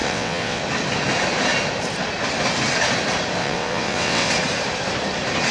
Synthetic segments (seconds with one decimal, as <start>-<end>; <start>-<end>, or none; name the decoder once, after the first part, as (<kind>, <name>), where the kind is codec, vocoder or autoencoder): 0.0-0.6 (vocoder, WaveNeXt); 3.4-4.3